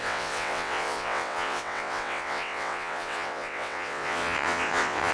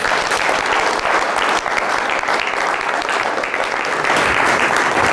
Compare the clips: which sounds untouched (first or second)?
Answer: second